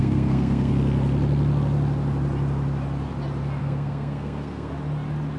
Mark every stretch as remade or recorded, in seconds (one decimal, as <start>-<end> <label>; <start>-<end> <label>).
0.0-0.7 remade; 0.7-3.6 recorded; 3.6-4.7 remade; 4.7-5.4 recorded